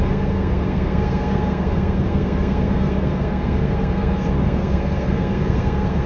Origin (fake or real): fake